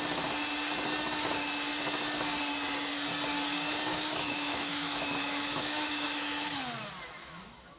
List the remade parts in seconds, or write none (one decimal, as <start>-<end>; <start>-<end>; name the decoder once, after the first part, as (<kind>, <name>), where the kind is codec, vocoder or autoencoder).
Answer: 3.9-6.6 (autoencoder, DAC-VAE); 7.2-7.8